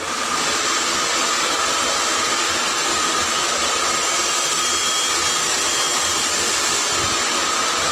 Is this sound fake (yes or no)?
no